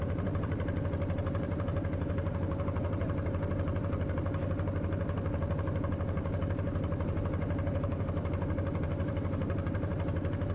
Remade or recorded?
remade